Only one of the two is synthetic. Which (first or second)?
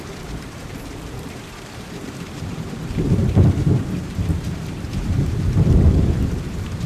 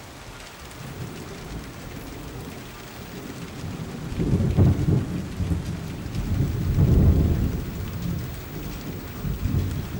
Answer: first